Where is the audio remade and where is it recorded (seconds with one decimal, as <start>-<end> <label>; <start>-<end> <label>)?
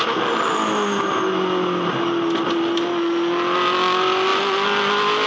0.0-5.3 recorded